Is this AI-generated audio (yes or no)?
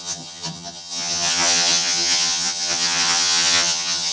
yes